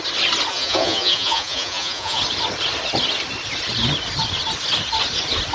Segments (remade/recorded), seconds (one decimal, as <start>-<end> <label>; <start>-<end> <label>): 0.0-0.5 recorded; 0.5-2.2 remade; 2.2-5.5 recorded